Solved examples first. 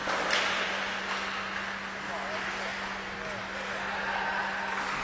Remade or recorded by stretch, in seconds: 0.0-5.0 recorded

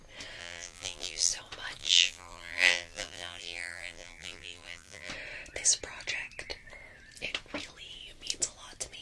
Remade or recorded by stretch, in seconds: 0.0-0.4 recorded; 0.4-1.3 remade; 1.3-1.8 recorded; 1.8-5.1 remade; 5.1-9.0 recorded

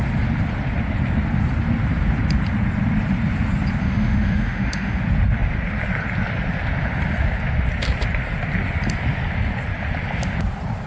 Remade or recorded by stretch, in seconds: 0.0-3.8 recorded; 3.8-5.0 remade; 5.0-10.9 recorded